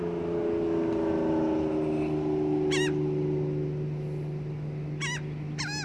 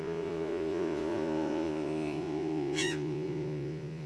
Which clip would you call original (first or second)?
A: first